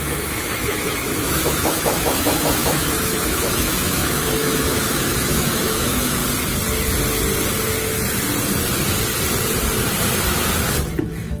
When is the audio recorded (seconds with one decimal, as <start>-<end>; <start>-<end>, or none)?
6.2-11.0